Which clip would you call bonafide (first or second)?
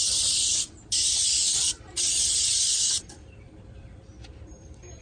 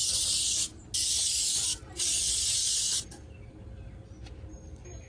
second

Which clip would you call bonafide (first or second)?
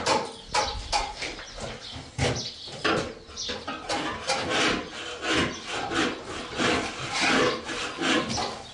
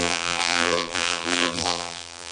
first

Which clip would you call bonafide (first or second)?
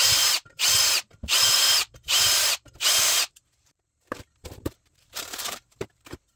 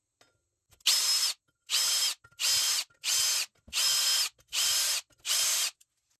second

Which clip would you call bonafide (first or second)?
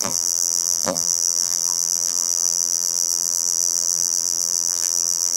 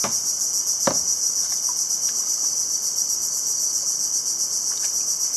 second